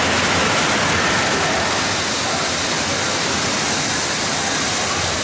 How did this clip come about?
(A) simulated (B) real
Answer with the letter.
B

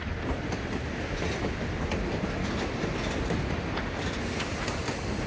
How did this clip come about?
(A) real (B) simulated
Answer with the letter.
A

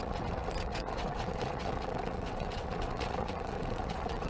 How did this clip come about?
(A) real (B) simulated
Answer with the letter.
B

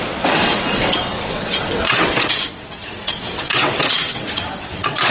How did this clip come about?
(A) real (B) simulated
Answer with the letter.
B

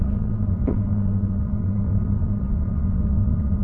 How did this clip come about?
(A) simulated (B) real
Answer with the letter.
A